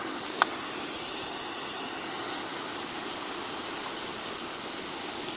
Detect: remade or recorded recorded